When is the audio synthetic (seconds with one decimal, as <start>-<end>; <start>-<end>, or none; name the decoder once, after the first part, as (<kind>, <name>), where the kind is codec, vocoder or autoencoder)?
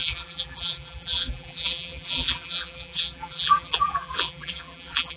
0.0-5.2 (vocoder, BigVGAN v2)